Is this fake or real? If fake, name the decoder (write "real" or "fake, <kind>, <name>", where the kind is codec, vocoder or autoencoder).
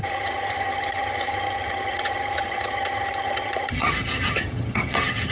fake, vocoder, HiFi-GAN